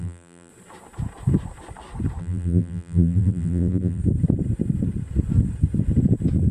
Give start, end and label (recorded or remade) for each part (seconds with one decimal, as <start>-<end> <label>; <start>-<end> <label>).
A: 0.0-0.5 remade; 0.5-2.2 recorded; 2.2-4.0 remade; 4.0-6.5 recorded